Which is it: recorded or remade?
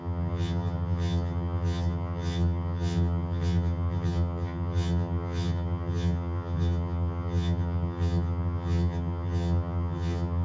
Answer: remade